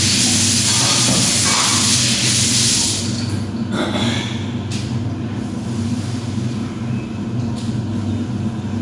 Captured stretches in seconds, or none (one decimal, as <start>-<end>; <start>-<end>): 0.0-8.8